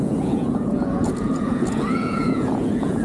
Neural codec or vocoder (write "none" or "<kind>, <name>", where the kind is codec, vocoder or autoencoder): vocoder, Vocos